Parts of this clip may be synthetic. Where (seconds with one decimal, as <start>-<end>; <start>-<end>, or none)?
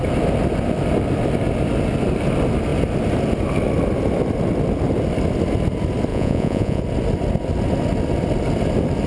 6.1-6.8